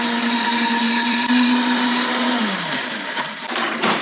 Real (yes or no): no